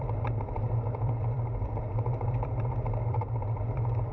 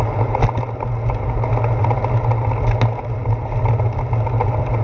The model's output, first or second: first